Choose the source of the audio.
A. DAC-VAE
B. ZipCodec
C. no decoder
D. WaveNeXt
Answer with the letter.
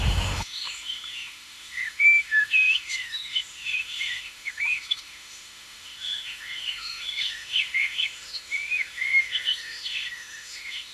A